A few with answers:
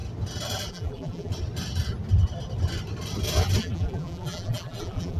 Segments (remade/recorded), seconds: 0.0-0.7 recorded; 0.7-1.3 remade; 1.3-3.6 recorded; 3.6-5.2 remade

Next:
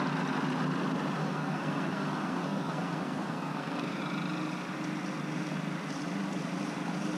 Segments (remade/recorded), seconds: 0.0-1.2 recorded; 1.2-4.0 remade; 4.0-7.2 recorded

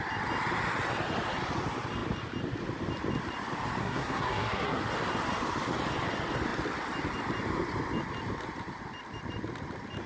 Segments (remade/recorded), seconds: 0.0-3.8 recorded; 3.8-4.8 remade; 4.8-10.1 recorded

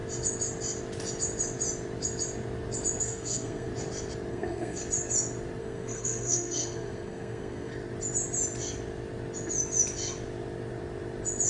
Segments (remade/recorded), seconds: 0.0-3.0 recorded; 3.0-3.7 remade; 3.7-4.3 recorded; 4.3-4.8 remade; 4.8-5.6 recorded; 5.6-7.7 remade; 7.7-11.5 recorded

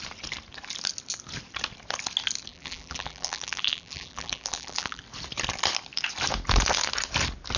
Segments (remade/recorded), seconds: 0.0-2.5 recorded; 2.5-5.0 remade; 5.0-7.6 recorded

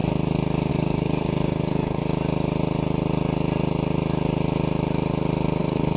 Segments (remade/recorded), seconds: 0.0-0.7 recorded; 0.7-2.0 remade; 2.0-5.6 recorded; 5.6-6.0 remade

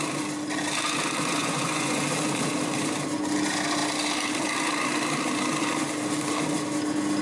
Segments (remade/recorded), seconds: 0.0-1.4 recorded; 1.4-2.0 remade; 2.0-7.2 recorded